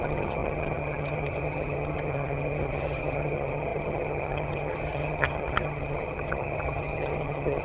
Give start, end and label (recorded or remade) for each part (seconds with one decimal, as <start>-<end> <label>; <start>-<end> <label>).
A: 0.0-7.6 remade